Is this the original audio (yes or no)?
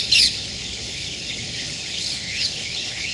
no